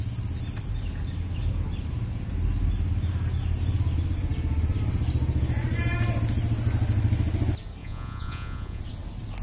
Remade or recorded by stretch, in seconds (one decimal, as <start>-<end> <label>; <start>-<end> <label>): 0.0-7.8 recorded; 7.8-8.8 remade; 8.8-9.4 recorded